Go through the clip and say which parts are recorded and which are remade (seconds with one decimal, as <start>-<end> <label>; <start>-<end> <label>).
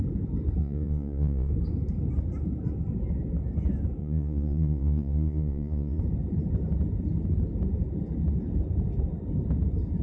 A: 0.0-0.6 recorded; 0.6-1.5 remade; 1.5-4.0 recorded; 4.0-6.0 remade; 6.0-10.0 recorded